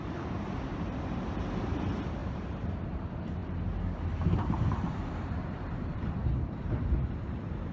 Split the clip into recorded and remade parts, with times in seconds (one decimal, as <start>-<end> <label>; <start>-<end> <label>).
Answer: 0.0-7.7 remade